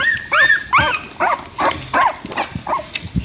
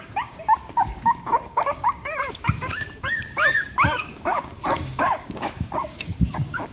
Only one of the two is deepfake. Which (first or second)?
second